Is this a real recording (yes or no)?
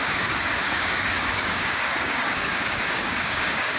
no